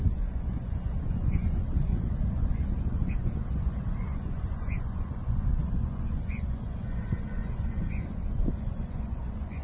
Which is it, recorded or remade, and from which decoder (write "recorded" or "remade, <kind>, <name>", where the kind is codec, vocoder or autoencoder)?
remade, vocoder, Vocos